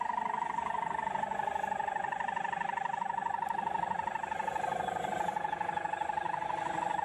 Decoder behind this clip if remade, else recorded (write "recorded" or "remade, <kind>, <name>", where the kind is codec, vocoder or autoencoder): recorded